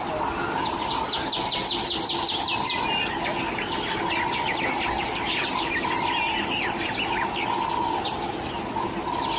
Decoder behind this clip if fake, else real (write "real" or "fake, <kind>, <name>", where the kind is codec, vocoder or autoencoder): real